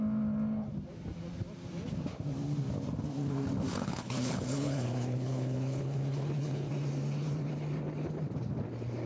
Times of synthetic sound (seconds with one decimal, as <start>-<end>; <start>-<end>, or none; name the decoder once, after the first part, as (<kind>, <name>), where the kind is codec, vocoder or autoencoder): 3.7-6.7 (codec, HILCodec)